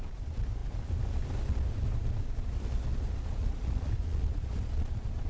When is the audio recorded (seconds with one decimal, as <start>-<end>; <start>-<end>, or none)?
0.0-2.9